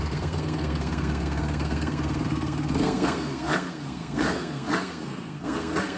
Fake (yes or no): yes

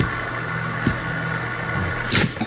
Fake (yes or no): no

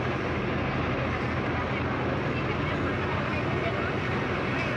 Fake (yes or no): no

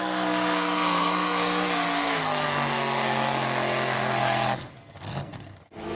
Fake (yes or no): yes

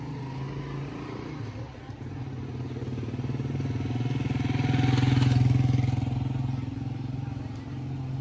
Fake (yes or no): no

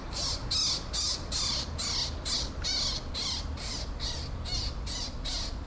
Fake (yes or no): no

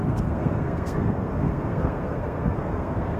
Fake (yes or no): yes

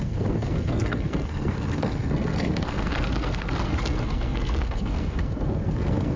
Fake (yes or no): yes